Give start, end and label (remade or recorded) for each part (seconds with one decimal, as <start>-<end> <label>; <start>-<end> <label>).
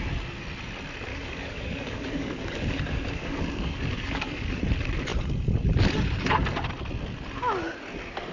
0.0-1.1 recorded; 1.1-4.6 remade; 4.6-8.3 recorded